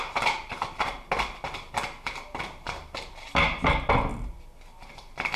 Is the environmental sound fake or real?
real